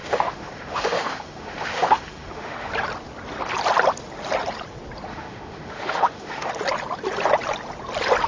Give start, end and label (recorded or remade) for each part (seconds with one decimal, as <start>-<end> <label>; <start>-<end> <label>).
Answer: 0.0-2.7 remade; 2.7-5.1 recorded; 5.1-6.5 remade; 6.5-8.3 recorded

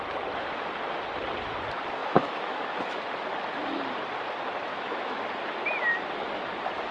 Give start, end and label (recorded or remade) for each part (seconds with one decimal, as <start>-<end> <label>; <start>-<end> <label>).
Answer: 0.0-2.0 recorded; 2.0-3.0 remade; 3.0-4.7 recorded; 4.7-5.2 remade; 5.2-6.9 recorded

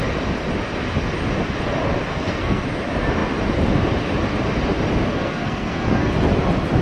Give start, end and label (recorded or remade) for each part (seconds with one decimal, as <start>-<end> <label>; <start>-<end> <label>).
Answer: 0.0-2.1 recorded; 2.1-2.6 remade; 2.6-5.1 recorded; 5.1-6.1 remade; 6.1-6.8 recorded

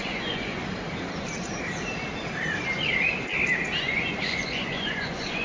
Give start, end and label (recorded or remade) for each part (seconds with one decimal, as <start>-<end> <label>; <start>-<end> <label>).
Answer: 0.0-0.6 remade; 0.6-3.8 recorded; 3.8-5.4 remade

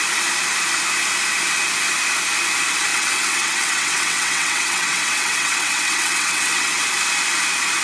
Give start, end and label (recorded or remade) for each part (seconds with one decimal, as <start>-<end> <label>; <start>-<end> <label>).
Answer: 0.0-2.9 recorded; 2.9-6.8 remade; 6.8-7.8 recorded